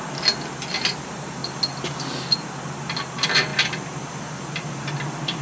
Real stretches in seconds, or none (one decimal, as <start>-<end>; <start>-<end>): 0.0-5.4